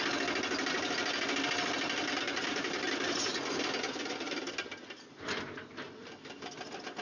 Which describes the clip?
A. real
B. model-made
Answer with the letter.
A